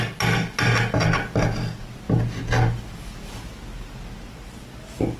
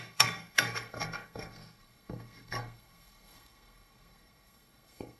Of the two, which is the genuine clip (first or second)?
first